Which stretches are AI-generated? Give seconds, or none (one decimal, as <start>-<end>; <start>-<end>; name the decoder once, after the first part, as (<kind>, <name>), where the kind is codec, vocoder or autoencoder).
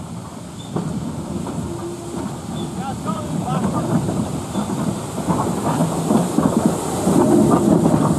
2.9-4.9 (vocoder, BigVGAN v2)